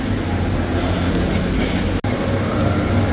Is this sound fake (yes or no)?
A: no